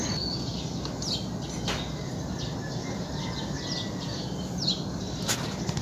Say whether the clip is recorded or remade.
recorded